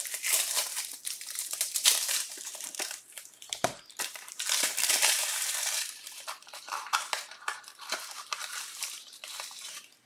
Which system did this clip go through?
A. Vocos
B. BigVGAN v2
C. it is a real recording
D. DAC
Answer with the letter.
B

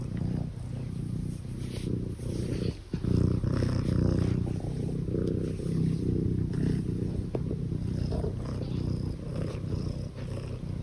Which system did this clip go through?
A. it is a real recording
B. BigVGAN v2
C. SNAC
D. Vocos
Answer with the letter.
A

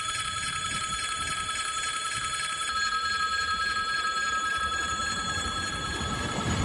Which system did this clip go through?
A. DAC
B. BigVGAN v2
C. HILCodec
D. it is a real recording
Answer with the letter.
B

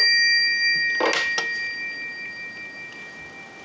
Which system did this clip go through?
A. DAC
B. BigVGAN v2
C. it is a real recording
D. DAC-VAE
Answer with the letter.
C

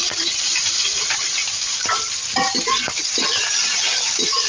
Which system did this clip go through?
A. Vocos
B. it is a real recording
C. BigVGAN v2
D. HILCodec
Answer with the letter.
C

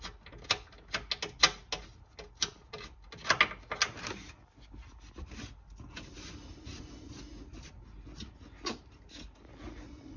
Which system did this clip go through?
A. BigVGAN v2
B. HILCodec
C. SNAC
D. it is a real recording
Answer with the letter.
D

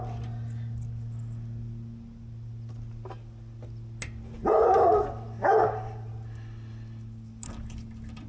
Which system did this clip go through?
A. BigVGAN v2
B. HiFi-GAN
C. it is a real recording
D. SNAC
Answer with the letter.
C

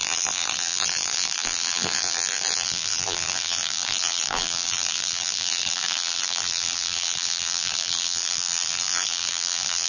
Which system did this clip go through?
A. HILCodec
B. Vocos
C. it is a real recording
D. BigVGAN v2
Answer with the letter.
D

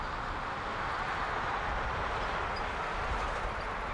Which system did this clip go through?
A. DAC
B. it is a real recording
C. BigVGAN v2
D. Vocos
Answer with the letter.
B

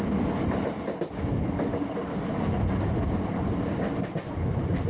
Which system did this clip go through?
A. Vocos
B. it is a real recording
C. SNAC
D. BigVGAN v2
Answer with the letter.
B